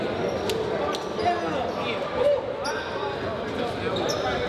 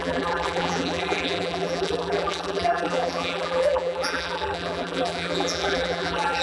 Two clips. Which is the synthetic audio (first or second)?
second